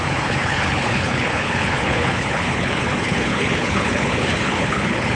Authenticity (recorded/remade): remade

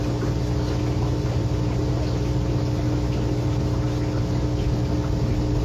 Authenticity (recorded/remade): recorded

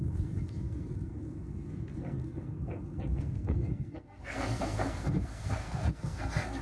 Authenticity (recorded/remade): remade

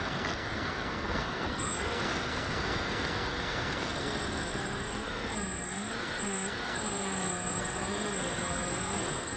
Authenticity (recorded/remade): remade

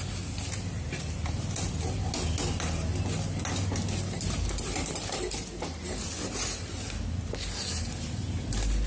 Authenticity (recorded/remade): recorded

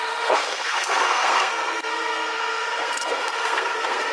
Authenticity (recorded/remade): remade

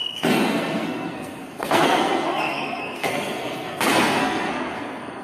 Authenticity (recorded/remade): remade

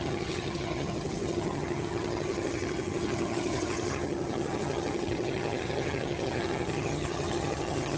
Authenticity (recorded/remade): remade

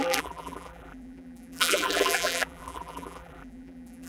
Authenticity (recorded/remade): remade